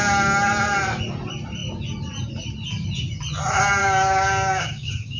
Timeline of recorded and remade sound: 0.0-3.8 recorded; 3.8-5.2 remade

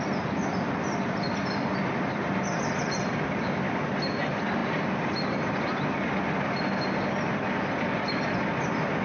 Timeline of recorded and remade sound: 0.0-9.0 recorded

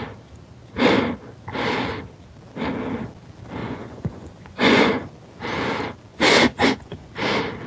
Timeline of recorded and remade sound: 0.0-3.6 recorded; 3.6-5.1 remade; 5.1-6.1 recorded; 6.1-7.1 remade; 7.1-7.7 recorded

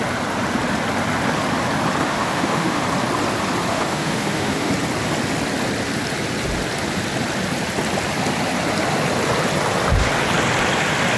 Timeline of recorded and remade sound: 0.0-2.0 recorded; 2.0-2.8 remade; 2.8-3.7 recorded; 3.7-4.7 remade; 4.7-11.2 recorded